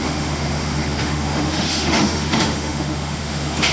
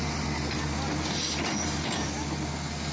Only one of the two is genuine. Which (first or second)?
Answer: second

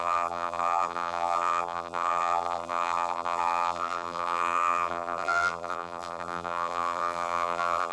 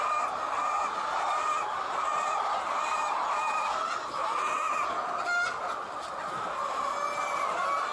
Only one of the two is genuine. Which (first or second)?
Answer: second